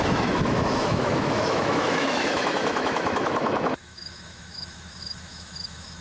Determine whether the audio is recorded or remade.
remade